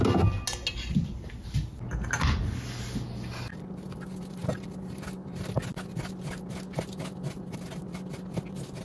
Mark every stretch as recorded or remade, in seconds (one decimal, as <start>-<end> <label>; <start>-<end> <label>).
0.0-8.8 recorded